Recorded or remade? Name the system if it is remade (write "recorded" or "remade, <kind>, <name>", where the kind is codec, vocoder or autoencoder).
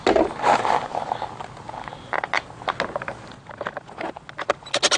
recorded